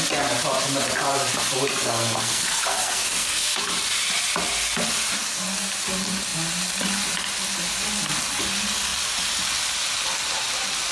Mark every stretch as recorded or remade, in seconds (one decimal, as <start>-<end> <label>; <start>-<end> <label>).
0.0-1.7 recorded; 1.7-3.7 remade; 3.7-10.9 recorded